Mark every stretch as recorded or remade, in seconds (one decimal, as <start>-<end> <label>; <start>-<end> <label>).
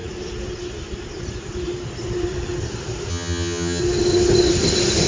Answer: 0.0-3.1 recorded; 3.1-3.8 remade; 3.8-5.1 recorded